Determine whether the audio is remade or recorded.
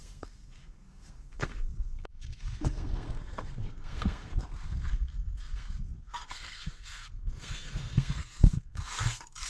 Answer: remade